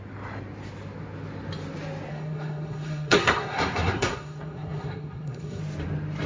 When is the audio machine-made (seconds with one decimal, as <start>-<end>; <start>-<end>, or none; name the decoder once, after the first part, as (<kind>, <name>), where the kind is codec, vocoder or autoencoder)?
2.1-5.6 (codec, SNAC)